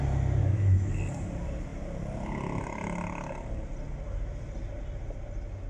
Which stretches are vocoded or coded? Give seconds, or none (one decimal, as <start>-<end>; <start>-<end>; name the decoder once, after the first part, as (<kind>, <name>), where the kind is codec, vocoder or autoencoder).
0.4-0.9 (autoencoder, DAC-VAE)